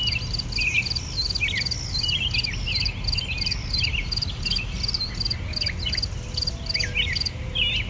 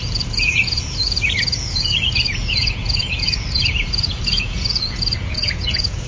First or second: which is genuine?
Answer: first